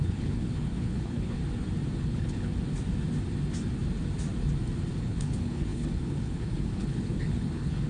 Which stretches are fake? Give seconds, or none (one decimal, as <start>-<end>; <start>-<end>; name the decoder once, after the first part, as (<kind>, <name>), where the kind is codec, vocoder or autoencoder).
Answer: 0.0-1.4 (codec, HILCodec); 2.0-2.5; 5.0-7.9